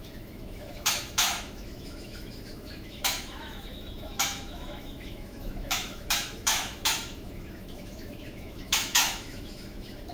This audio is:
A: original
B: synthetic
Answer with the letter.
B